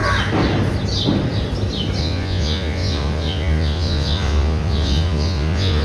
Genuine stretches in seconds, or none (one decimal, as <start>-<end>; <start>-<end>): 0.0-2.0